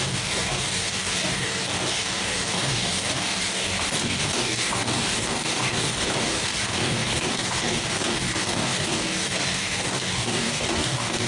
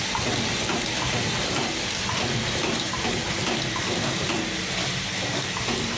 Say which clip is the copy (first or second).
first